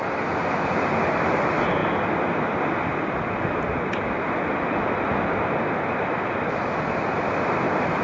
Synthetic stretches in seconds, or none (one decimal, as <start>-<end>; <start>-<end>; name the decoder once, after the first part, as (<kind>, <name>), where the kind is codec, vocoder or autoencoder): none